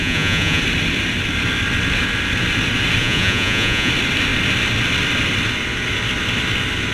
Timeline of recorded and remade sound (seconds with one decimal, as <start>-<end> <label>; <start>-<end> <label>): 0.0-0.6 remade; 0.6-3.0 recorded; 3.0-3.9 remade; 3.9-6.9 recorded